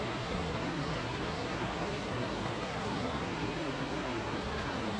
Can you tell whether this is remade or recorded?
remade